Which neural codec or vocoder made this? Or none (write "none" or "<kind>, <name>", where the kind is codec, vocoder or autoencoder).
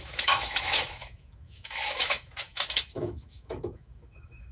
autoencoder, DAC-VAE